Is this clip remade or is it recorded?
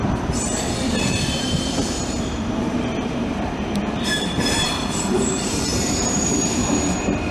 remade